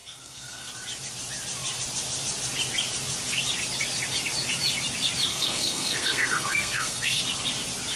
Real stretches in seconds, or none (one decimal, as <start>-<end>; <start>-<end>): 0.7-5.3; 7.2-8.0